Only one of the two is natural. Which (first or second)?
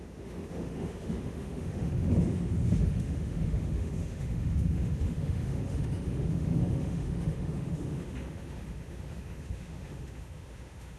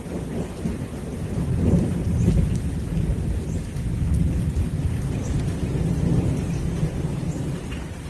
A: second